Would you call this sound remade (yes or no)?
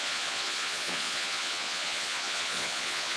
yes